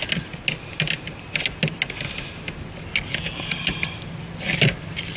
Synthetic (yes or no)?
no